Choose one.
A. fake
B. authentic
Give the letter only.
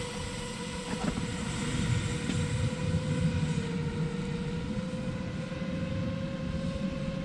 B